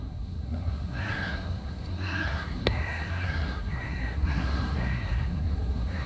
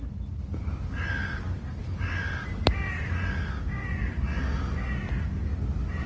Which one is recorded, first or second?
second